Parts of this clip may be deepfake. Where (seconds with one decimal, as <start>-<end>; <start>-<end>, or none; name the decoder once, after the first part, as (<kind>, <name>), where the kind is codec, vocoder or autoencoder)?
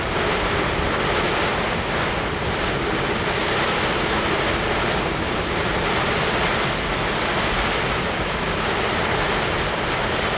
3.4-5.8 (vocoder, BigVGAN v2)